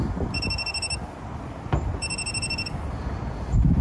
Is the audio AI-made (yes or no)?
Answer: yes